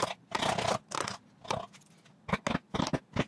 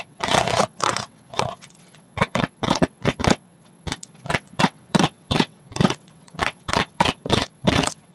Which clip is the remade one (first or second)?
second